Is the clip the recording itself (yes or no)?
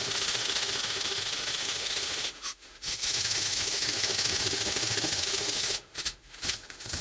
no